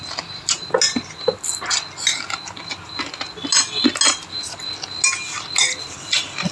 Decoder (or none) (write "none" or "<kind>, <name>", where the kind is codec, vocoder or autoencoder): none